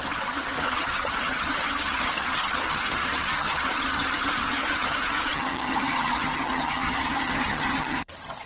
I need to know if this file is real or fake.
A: fake